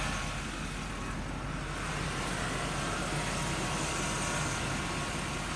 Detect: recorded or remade recorded